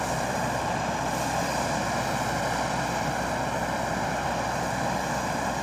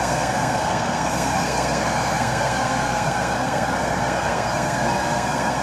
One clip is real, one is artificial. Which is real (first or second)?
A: first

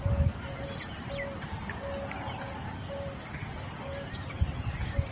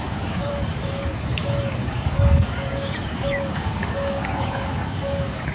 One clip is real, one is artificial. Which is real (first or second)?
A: first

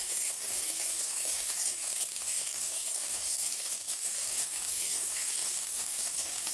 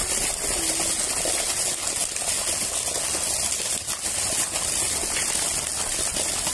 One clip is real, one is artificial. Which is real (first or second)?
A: second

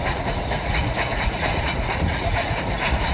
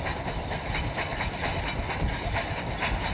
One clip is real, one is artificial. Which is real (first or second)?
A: second